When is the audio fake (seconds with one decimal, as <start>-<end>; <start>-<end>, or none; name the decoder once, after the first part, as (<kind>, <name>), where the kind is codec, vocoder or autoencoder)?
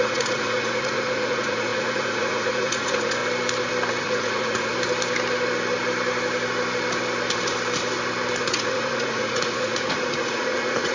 0.0-3.2 (vocoder, Vocos); 3.9-4.7; 8.4-10.9